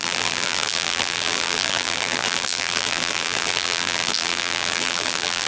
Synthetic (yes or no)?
yes